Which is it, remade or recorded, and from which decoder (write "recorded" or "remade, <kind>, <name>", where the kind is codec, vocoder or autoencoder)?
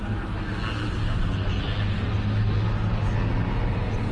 recorded